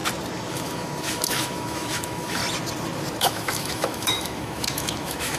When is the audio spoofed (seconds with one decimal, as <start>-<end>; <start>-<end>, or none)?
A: 0.5-2.4; 3.2-5.4